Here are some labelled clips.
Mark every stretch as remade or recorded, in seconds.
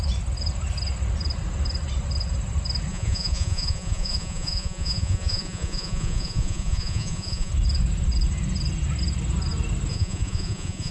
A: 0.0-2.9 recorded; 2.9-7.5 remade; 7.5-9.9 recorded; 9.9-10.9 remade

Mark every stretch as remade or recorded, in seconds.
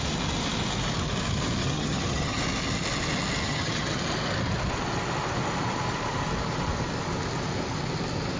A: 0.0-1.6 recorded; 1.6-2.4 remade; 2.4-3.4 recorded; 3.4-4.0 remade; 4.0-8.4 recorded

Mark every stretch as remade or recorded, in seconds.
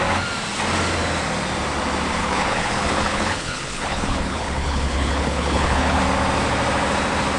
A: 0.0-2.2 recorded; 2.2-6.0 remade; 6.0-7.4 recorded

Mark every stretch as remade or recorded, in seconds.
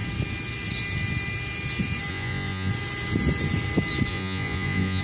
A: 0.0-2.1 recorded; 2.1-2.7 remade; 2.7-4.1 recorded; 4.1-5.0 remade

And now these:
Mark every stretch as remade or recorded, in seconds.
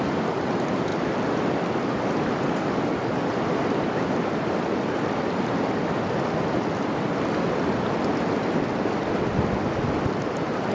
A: 0.0-10.7 recorded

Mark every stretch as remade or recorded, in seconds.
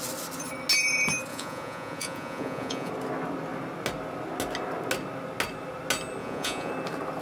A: 0.0-1.3 recorded; 1.3-2.9 remade; 2.9-6.2 recorded; 6.2-6.7 remade; 6.7-7.2 recorded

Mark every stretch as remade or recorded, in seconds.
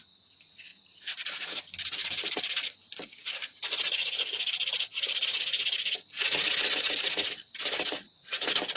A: 0.0-8.8 recorded